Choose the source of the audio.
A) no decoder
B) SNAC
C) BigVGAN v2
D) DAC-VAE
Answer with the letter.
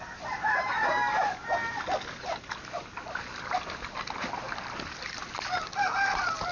A